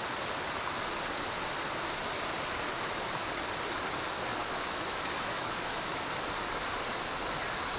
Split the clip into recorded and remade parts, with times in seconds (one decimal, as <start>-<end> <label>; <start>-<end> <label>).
0.0-4.4 recorded; 4.4-6.0 remade; 6.0-7.8 recorded